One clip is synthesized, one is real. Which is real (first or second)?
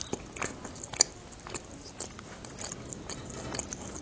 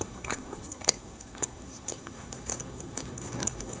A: first